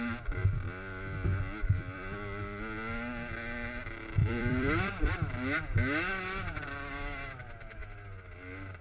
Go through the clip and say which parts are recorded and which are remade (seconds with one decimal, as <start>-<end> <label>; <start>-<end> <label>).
0.0-4.2 recorded; 4.2-5.1 remade; 5.1-8.8 recorded